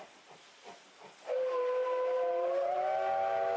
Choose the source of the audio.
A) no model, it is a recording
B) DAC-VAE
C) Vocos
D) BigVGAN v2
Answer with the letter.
A